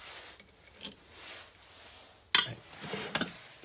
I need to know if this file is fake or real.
real